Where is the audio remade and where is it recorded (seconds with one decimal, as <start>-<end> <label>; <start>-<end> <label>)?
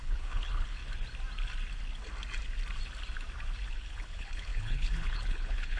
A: 0.0-0.8 remade; 0.8-3.7 recorded; 3.7-5.8 remade